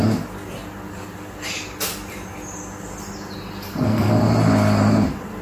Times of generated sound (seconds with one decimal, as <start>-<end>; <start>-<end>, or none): 3.7-4.2

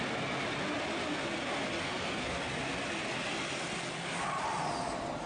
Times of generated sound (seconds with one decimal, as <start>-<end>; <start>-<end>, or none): 1.8-2.3

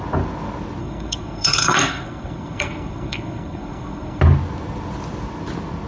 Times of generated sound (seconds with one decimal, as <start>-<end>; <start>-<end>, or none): 0.8-4.2